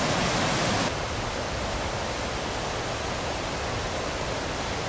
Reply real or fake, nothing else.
real